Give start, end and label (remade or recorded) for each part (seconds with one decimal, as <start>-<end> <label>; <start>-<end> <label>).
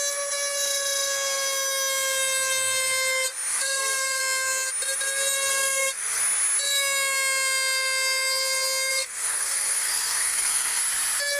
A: 0.0-3.5 recorded; 3.5-4.2 remade; 4.2-5.5 recorded; 5.5-6.2 remade; 6.2-8.9 recorded; 8.9-10.8 remade; 10.8-11.4 recorded